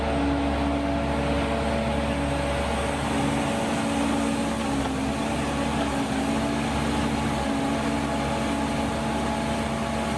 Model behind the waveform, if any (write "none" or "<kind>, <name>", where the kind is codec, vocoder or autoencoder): none